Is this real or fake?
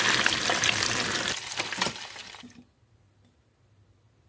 real